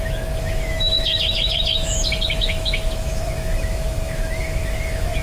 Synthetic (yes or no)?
yes